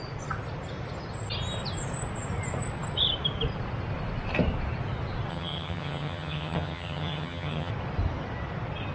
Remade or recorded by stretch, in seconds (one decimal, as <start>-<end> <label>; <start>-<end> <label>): 0.0-5.3 recorded; 5.3-7.7 remade; 7.7-8.9 recorded